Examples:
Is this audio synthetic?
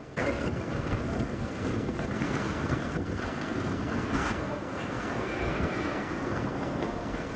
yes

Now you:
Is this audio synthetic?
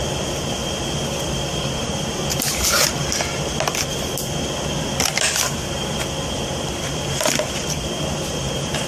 no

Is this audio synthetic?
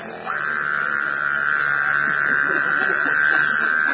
no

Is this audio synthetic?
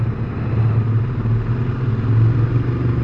no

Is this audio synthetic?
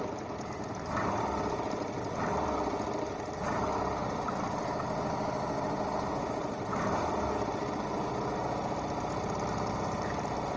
no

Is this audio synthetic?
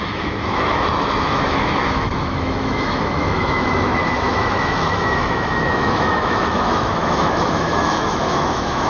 yes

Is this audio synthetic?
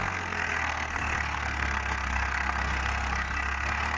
yes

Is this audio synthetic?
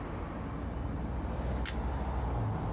no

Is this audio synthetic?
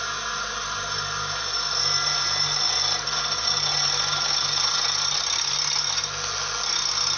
no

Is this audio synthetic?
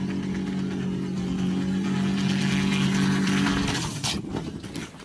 no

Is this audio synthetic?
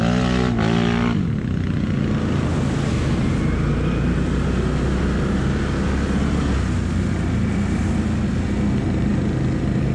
no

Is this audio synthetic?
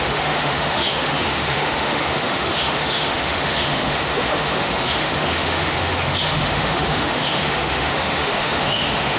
yes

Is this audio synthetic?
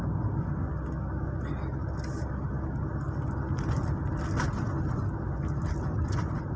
no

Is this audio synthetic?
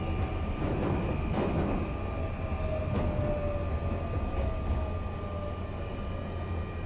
no